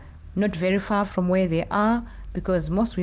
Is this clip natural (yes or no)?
yes